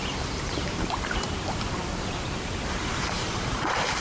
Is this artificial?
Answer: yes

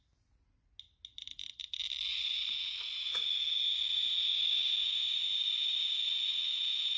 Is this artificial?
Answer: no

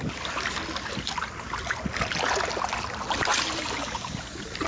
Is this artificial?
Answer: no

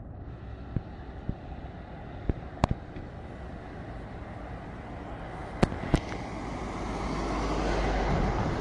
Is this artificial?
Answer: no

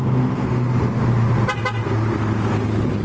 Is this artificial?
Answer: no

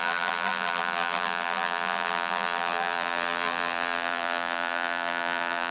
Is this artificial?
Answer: yes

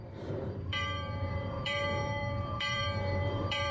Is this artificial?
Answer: yes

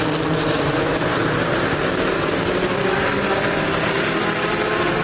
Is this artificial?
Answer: yes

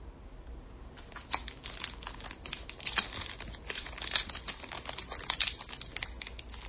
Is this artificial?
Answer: no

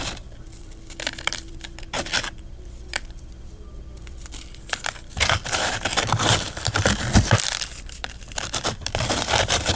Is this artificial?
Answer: yes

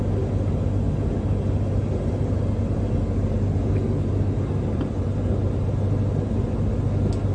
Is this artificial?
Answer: no